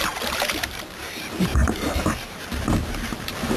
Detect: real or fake fake